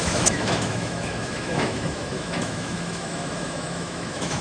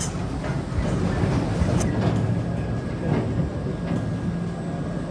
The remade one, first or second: first